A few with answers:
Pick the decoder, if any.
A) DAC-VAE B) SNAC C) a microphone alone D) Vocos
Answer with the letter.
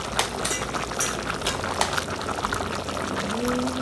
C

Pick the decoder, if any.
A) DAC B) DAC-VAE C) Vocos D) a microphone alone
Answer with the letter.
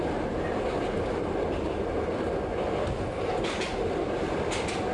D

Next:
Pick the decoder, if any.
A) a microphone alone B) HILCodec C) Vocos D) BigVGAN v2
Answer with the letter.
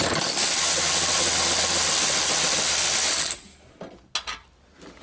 A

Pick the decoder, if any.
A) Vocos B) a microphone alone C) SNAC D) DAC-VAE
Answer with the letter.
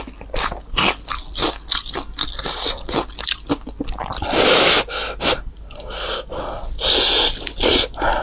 B